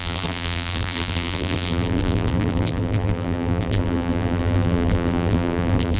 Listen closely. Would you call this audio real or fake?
fake